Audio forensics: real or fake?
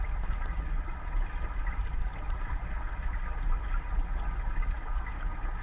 real